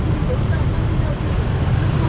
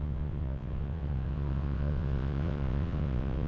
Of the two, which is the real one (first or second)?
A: first